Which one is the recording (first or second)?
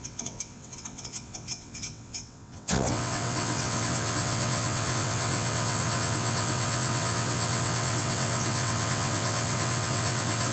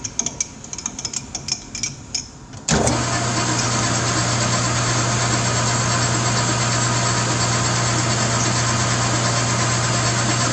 second